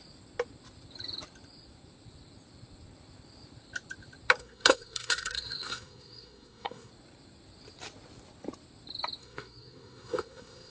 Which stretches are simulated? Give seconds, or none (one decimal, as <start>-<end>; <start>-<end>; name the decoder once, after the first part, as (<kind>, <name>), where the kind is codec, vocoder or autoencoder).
4.4-6.9 (codec, SNAC); 9.2-10.7